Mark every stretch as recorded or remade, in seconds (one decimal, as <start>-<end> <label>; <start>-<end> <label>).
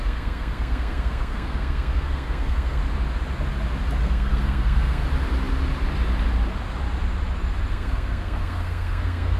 0.0-2.8 remade; 2.8-4.0 recorded; 4.0-5.0 remade; 5.0-7.7 recorded; 7.7-9.4 remade